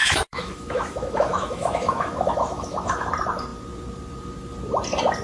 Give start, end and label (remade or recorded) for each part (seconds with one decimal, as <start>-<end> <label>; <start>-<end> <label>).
0.0-3.1 remade; 3.1-5.2 recorded